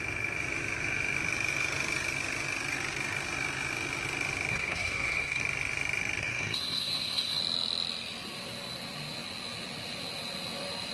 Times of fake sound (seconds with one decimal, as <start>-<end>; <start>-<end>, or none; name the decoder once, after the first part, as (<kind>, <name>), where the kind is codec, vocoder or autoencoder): 4.5-5.4 (codec, SNAC); 6.2-7.4